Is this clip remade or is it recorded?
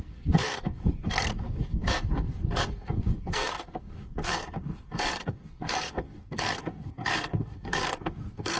remade